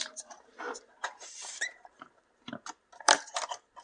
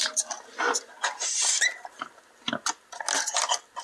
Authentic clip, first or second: second